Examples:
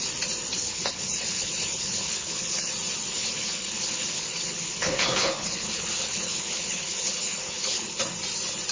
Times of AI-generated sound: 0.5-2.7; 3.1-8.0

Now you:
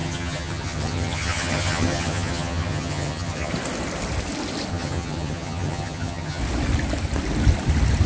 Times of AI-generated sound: 0.0-3.5; 4.7-6.4